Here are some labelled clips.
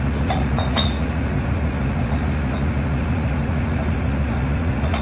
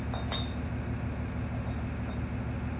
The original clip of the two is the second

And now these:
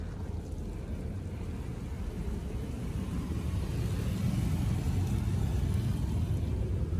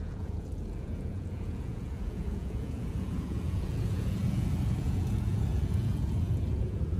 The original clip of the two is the first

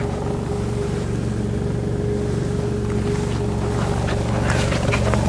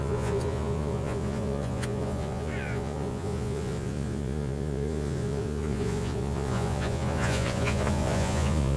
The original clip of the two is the first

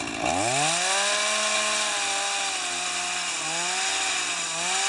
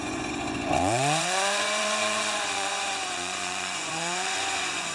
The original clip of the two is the first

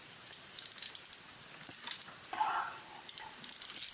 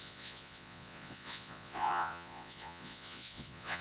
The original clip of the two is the first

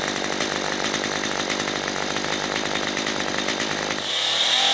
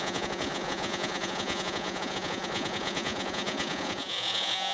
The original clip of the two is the first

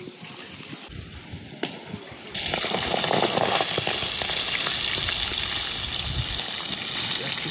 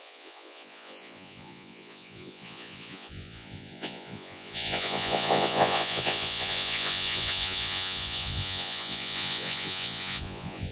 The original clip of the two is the first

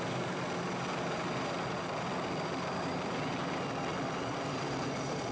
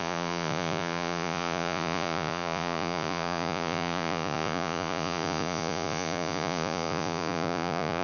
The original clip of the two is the first